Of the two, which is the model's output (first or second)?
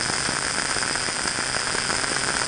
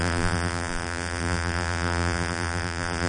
second